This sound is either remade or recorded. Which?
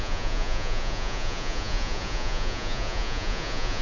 remade